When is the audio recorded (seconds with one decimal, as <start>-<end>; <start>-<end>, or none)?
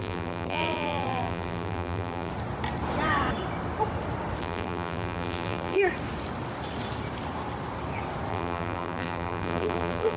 2.3-4.4; 5.8-8.3